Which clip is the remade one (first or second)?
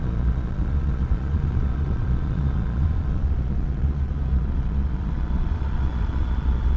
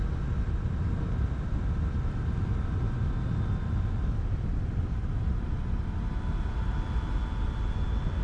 first